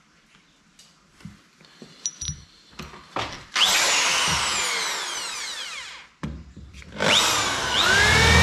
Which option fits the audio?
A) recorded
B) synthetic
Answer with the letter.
A